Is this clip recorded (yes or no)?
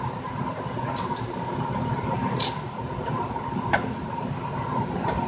yes